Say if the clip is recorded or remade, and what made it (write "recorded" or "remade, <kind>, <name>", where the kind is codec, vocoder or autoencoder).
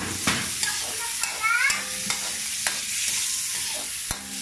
recorded